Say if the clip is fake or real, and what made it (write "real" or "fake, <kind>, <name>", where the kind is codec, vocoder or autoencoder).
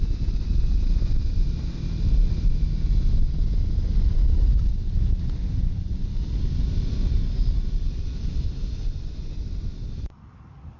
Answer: real